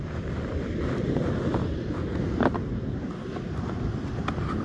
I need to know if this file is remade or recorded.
recorded